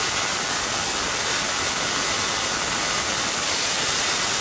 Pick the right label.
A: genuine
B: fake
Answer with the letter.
A